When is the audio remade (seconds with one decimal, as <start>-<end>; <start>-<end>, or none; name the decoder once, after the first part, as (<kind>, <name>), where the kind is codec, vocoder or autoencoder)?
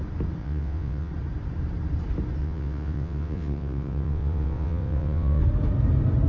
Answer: 0.4-1.1 (vocoder, WaveNeXt); 2.4-5.4